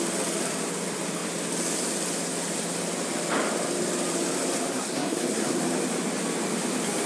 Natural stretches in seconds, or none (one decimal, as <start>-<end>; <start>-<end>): 0.0-4.7; 5.6-7.1